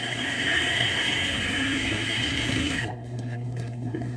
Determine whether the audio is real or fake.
fake